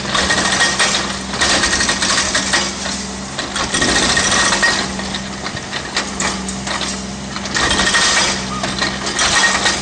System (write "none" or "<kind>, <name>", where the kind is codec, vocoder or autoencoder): none